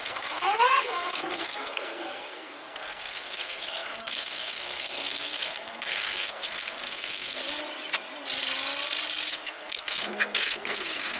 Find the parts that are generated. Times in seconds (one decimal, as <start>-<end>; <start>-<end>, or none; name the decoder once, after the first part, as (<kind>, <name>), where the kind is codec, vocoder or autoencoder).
0.0-7.4 (codec, SNAC); 9.3-11.2